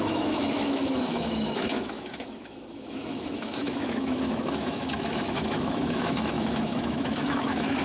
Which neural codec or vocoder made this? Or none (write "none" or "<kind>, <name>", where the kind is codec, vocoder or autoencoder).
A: autoencoder, DAC-VAE